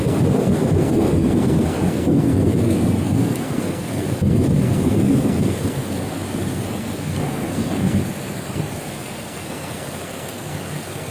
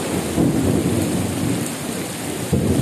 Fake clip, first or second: first